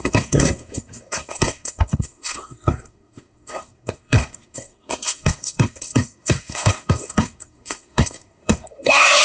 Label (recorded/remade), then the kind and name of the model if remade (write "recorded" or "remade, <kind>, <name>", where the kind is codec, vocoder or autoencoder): remade, codec, SNAC